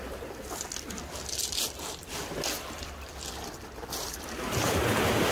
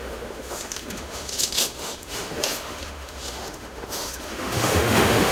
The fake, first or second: second